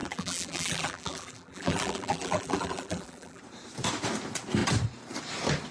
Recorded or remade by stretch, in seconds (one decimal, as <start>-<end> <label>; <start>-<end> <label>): 0.0-3.4 remade; 3.4-5.7 recorded